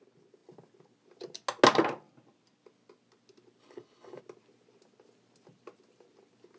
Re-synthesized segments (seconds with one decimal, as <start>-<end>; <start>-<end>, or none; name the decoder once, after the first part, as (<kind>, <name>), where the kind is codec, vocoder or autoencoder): 3.6-4.2 (codec, HILCodec)